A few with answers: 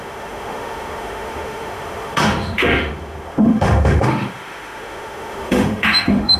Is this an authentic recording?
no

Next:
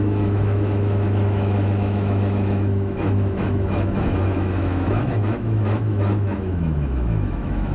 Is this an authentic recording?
no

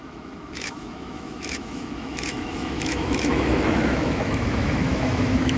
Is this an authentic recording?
no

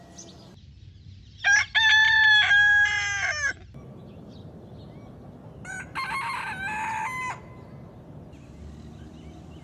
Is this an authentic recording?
yes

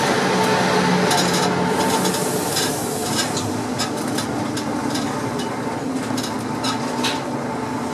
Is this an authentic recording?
yes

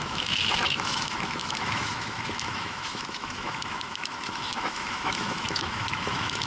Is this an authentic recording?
no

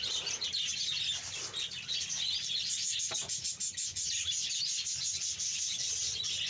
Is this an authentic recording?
yes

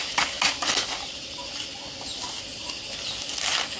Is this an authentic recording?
yes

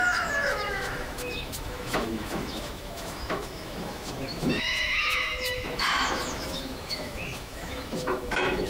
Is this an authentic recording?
no